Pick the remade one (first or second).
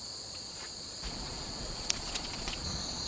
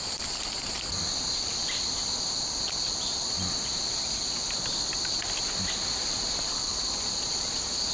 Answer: first